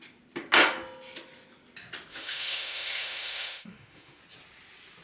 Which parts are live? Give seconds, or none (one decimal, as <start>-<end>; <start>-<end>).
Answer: 0.0-2.1; 4.2-5.0